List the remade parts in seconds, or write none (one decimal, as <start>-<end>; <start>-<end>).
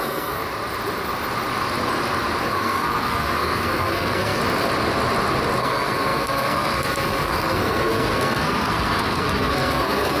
0.0-0.4; 2.5-4.4; 5.6-10.2